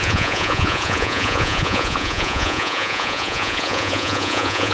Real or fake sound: fake